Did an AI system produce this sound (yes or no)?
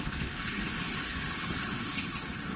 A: yes